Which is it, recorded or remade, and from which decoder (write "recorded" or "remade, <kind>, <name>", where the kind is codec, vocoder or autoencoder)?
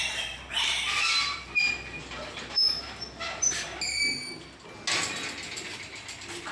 recorded